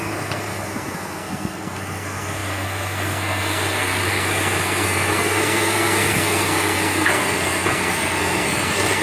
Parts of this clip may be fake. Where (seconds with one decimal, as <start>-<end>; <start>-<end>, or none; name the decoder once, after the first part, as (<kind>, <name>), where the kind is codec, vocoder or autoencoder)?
0.0-9.0 (codec, SNAC)